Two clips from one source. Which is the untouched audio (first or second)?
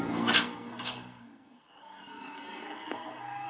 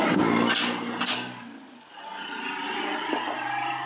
second